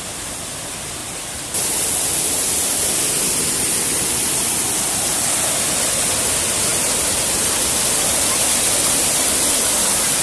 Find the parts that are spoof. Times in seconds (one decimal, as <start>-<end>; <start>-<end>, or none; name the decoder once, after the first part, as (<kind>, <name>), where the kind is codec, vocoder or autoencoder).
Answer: 1.0-1.5 (vocoder, BigVGAN v2)

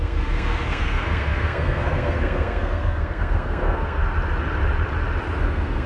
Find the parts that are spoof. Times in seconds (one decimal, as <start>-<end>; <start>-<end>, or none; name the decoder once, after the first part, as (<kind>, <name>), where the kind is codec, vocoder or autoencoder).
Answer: 0.0-4.0 (codec, SNAC); 5.4-5.9

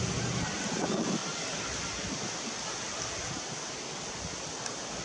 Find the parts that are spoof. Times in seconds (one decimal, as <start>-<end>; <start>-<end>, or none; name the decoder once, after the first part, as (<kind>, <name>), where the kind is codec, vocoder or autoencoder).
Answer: none

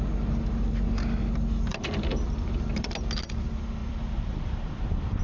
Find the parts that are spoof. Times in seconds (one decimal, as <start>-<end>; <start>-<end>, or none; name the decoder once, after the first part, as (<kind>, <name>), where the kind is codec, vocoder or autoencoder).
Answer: 1.7-2.9 (vocoder, BigVGAN v2); 3.8-5.2

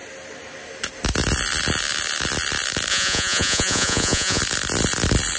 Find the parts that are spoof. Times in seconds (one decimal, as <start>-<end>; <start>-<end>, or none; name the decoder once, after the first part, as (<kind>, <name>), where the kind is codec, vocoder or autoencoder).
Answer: 2.9-4.4 (vocoder, Vocos)

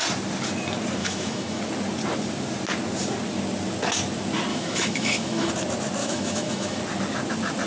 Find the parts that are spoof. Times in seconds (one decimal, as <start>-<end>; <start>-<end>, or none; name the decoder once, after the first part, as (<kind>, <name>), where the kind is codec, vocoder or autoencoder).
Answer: 1.0-1.6 (autoencoder, DAC-VAE); 4.5-5.5; 6.0-6.8